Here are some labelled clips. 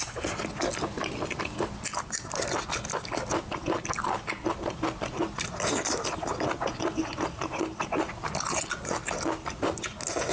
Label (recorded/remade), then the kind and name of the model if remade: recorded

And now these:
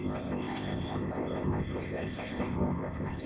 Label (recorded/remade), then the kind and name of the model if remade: remade, codec, ZipCodec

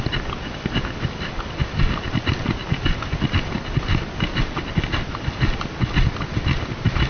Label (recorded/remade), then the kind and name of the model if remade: recorded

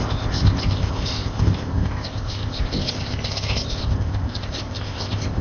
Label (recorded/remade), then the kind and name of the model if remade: remade, codec, ZipCodec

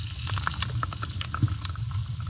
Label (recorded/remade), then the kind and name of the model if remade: recorded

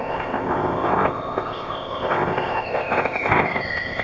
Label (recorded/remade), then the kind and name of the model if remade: remade, codec, ZipCodec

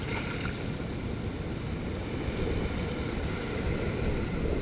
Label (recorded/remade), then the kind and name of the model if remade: recorded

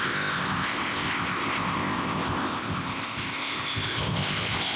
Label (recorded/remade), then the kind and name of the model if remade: remade, codec, ZipCodec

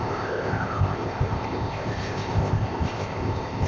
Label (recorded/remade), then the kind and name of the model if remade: remade, codec, ZipCodec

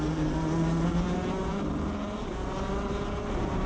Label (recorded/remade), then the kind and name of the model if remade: recorded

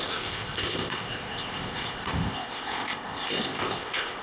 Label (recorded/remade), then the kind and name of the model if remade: remade, codec, ZipCodec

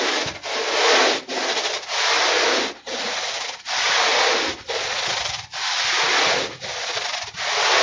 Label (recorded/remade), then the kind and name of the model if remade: recorded